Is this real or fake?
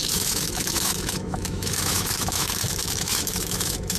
fake